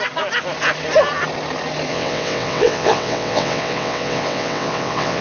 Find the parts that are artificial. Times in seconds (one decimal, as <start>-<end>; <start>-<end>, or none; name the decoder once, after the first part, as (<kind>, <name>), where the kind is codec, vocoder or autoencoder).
1.9-5.2 (vocoder, WaveNeXt)